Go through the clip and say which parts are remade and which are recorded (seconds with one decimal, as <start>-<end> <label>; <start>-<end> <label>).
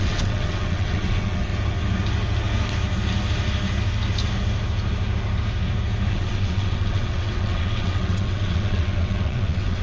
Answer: 0.0-1.5 remade; 1.5-6.1 recorded; 6.1-9.8 remade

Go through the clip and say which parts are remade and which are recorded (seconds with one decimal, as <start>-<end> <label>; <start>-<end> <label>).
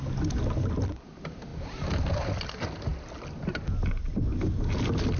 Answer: 0.0-5.2 recorded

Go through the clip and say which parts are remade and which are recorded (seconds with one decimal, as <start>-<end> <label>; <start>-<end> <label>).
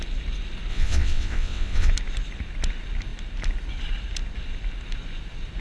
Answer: 0.0-0.7 recorded; 0.7-1.9 remade; 1.9-5.6 recorded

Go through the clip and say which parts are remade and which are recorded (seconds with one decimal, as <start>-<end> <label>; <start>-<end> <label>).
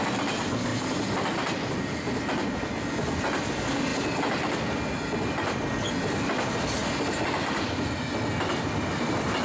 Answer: 0.0-9.4 recorded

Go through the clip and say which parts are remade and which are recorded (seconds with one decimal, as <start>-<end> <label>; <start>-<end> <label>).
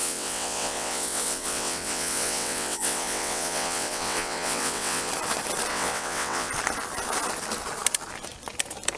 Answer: 0.0-5.1 remade; 5.1-5.7 recorded; 5.7-6.5 remade; 6.5-9.0 recorded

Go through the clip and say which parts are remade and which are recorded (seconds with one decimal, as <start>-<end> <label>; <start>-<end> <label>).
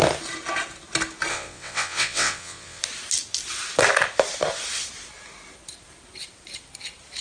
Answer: 0.0-1.3 recorded; 1.3-2.8 remade; 2.8-7.2 recorded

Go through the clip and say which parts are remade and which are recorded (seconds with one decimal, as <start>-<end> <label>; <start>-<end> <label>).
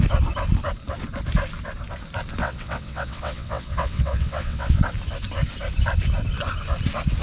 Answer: 0.0-2.4 recorded; 2.4-4.8 remade; 4.8-7.2 recorded